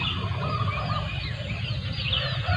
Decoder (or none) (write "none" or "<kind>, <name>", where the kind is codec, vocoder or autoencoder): none